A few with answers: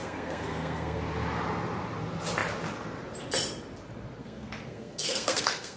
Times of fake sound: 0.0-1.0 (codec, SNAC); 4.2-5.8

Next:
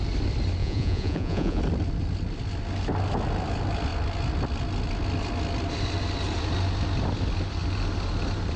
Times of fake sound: 0.6-1.6 (vocoder, Vocos)

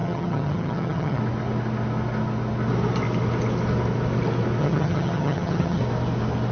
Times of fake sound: 0.0-1.2 (vocoder, HiFi-GAN); 4.6-5.8

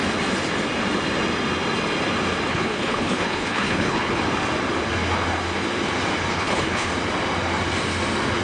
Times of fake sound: 2.5-4.2 (codec, HILCodec); 6.3-6.9